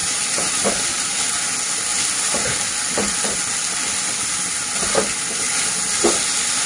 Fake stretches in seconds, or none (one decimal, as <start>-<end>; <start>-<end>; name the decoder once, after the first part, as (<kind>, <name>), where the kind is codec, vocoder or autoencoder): 0.0-1.3 (vocoder, BigVGAN v2)